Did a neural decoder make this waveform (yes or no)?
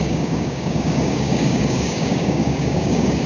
yes